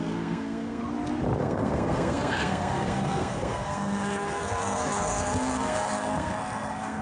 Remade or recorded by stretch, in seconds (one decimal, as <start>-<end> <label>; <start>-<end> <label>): 0.0-0.8 remade; 0.8-1.4 recorded; 1.4-7.0 remade